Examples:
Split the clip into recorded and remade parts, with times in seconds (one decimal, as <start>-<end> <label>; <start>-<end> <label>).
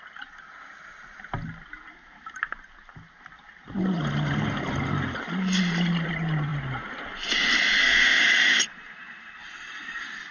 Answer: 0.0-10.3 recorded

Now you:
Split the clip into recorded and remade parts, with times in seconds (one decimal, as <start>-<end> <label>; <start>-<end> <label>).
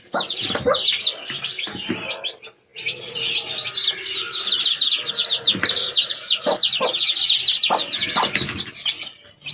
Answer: 0.0-9.5 recorded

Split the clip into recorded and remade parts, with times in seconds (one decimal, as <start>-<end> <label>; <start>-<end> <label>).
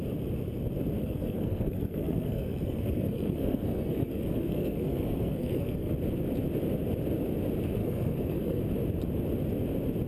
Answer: 0.0-1.0 recorded; 1.0-5.9 remade; 5.9-7.8 recorded; 7.8-8.6 remade; 8.6-10.1 recorded